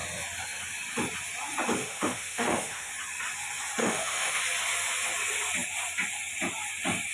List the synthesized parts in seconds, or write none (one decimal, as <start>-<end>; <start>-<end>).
1.8-2.9; 3.8-4.4